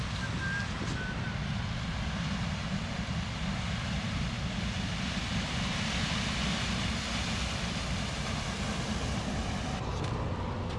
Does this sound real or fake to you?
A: real